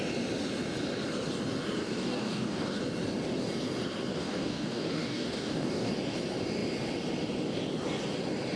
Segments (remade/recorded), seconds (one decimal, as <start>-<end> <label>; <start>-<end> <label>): 0.0-1.8 recorded; 1.8-2.8 remade; 2.8-4.1 recorded; 4.1-5.9 remade; 5.9-8.6 recorded

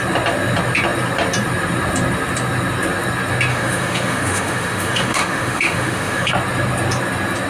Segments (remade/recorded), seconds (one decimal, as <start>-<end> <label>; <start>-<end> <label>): 0.0-3.5 recorded; 3.5-6.3 remade; 6.3-7.5 recorded

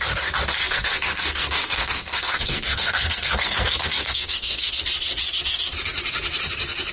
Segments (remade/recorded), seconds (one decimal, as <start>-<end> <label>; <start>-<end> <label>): 0.0-0.6 recorded; 0.6-4.7 remade; 4.7-6.9 recorded

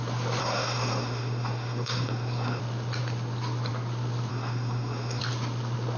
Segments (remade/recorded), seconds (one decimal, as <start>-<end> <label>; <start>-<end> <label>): 0.0-0.4 recorded; 0.4-2.6 remade; 2.6-4.3 recorded; 4.3-5.2 remade; 5.2-6.0 recorded

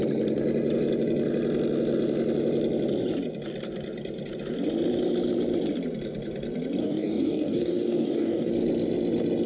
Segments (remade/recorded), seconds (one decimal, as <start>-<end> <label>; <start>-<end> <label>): 0.0-6.8 recorded; 6.8-8.5 remade; 8.5-9.5 recorded

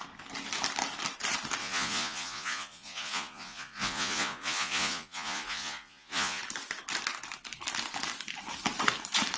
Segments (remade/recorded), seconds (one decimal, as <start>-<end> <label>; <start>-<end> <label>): 0.0-1.6 recorded; 1.6-6.4 remade; 6.4-9.4 recorded

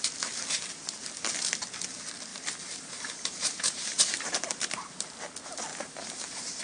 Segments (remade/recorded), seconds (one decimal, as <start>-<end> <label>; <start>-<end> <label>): 0.0-2.3 recorded; 2.3-5.2 remade; 5.2-5.7 recorded; 5.7-6.6 remade

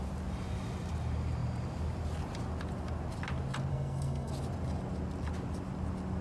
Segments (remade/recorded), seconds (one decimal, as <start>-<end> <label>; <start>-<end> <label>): 0.0-3.7 recorded; 3.7-4.3 remade; 4.3-6.2 recorded